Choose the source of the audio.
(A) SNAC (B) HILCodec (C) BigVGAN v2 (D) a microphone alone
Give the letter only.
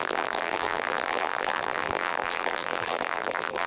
C